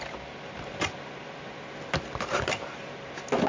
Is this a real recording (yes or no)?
yes